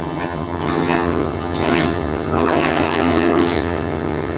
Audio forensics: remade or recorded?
remade